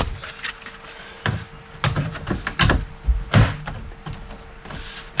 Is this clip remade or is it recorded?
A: recorded